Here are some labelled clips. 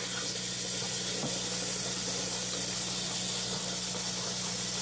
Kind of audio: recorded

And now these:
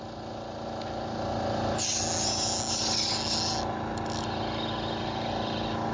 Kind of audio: recorded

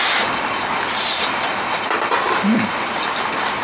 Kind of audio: recorded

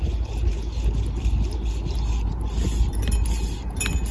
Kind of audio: recorded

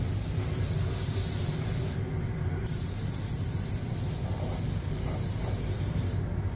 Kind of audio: recorded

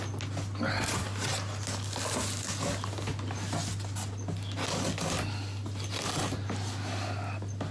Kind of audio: recorded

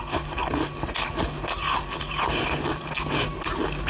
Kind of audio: recorded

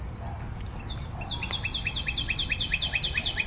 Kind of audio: recorded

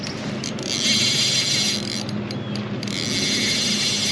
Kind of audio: recorded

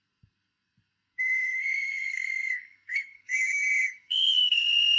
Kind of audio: remade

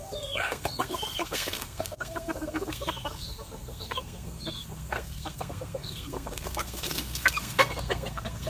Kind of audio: remade